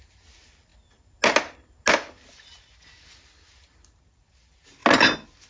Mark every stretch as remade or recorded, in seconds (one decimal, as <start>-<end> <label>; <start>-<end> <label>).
0.0-5.5 recorded